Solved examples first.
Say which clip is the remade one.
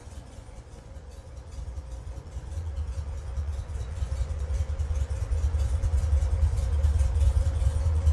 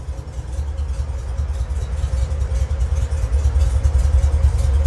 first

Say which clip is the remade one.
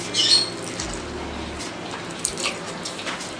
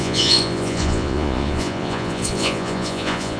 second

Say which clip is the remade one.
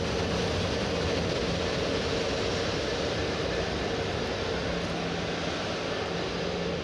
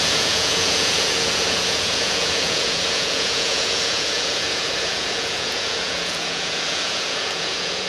second